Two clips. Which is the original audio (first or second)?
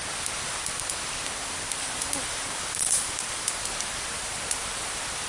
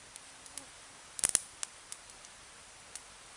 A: second